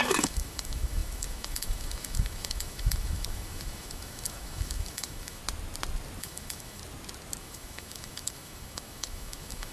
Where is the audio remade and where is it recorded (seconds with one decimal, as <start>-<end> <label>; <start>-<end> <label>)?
0.0-5.4 remade; 5.4-6.2 recorded; 6.2-6.8 remade; 6.8-7.4 recorded; 7.4-9.7 remade